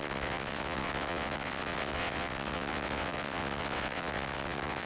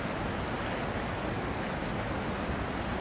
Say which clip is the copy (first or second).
first